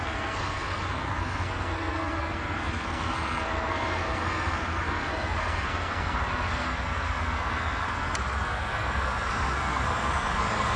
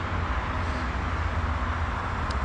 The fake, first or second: first